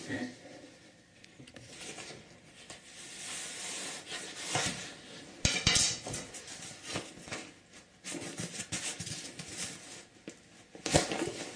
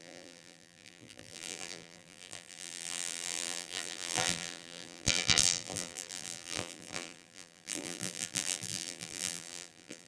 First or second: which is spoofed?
second